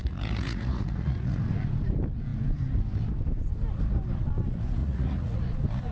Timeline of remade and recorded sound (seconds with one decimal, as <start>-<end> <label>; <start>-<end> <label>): 0.0-1.4 remade; 1.4-4.8 recorded; 4.8-5.4 remade; 5.4-5.9 recorded